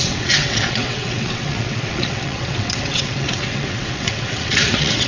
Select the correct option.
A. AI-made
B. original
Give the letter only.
A